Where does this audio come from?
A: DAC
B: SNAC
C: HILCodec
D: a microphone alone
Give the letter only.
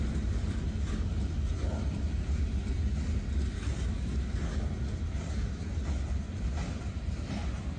D